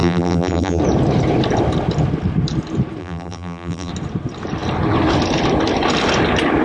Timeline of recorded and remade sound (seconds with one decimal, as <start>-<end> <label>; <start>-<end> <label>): 0.0-0.8 remade; 0.8-3.0 recorded; 3.0-3.9 remade; 3.9-6.6 recorded

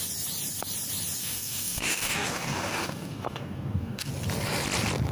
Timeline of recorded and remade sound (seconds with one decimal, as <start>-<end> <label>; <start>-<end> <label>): 0.0-1.2 recorded; 1.2-4.1 remade; 4.1-5.1 recorded

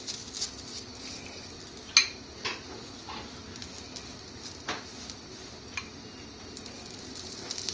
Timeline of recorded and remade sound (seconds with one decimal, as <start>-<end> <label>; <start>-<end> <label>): 0.0-7.7 recorded